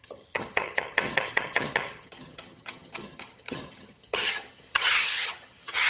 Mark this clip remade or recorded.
remade